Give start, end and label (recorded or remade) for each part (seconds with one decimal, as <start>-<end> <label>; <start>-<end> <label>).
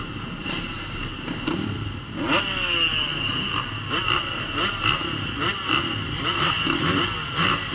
0.0-0.4 recorded; 0.4-1.7 remade; 1.7-7.7 recorded